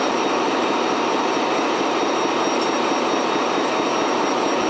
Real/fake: real